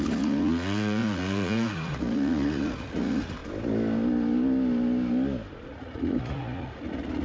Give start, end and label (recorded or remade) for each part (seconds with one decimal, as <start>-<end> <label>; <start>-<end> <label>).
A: 0.0-3.4 remade; 3.4-5.7 recorded; 5.7-7.2 remade